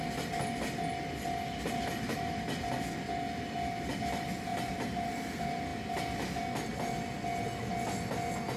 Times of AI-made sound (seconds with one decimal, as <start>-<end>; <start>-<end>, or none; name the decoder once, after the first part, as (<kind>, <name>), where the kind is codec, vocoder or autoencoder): 4.5-5.1 (vocoder, BigVGAN v2)